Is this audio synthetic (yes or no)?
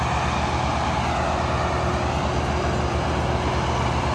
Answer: no